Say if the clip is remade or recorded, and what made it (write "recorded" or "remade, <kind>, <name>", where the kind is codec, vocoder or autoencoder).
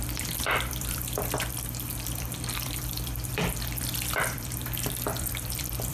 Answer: remade, vocoder, BigVGAN v2